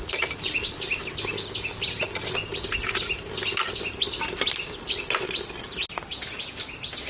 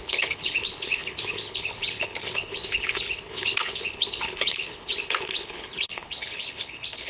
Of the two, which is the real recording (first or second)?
first